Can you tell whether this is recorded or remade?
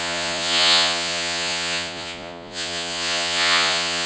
remade